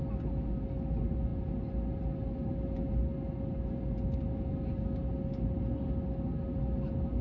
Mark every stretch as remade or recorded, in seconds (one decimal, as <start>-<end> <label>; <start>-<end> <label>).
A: 0.0-7.2 recorded